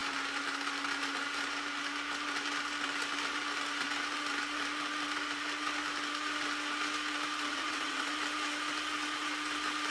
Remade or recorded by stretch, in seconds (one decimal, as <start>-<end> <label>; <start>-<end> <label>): 0.0-7.5 recorded; 7.5-8.1 remade; 8.1-9.9 recorded